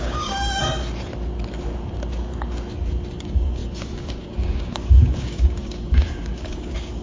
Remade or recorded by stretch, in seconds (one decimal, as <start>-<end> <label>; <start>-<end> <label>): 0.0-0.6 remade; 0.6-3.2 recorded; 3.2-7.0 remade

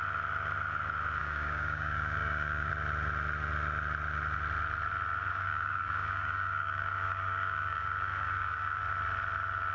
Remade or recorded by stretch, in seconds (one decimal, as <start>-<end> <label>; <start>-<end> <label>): 0.0-1.2 recorded; 1.2-2.7 remade; 2.7-5.3 recorded; 5.3-8.8 remade; 8.8-9.7 recorded

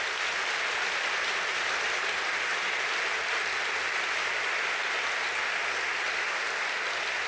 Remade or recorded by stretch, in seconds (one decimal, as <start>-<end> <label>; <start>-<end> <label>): 0.0-7.3 recorded

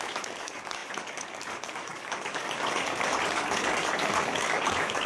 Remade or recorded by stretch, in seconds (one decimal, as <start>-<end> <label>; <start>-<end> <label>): 0.0-5.1 remade

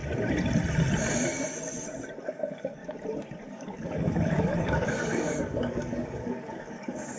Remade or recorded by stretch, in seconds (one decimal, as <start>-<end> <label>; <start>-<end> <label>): 0.0-2.3 recorded; 2.3-2.8 remade; 2.8-3.5 recorded; 3.5-7.2 remade

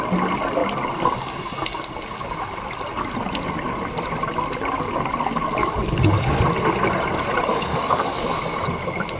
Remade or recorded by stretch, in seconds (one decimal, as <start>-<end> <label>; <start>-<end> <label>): 0.0-5.6 recorded; 5.6-6.4 remade; 6.4-7.5 recorded; 7.5-8.4 remade; 8.4-9.2 recorded

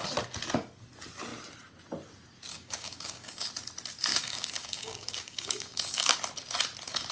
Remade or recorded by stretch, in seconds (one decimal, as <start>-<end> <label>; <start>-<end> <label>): 0.0-2.5 recorded; 2.5-3.5 remade; 3.5-4.1 recorded; 4.1-6.2 remade; 6.2-7.1 recorded

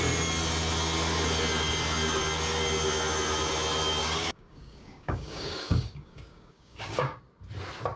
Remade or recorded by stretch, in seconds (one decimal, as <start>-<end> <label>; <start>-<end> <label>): 0.0-4.0 recorded; 4.0-7.2 remade; 7.2-8.0 recorded